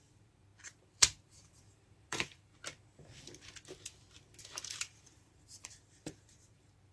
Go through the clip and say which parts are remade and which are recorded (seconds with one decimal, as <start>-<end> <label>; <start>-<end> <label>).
0.0-2.5 remade; 2.5-4.4 recorded; 4.4-6.9 remade